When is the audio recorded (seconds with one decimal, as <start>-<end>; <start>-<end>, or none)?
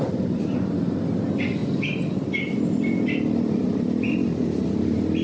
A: 0.0-5.2